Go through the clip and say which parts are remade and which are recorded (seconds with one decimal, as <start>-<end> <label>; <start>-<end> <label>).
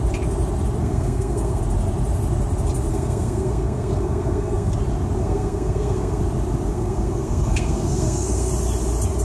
0.0-0.8 recorded; 0.8-1.6 remade; 1.6-2.9 recorded; 2.9-4.7 remade; 4.7-5.2 recorded; 5.2-6.2 remade; 6.2-6.7 recorded; 6.7-8.5 remade; 8.5-9.2 recorded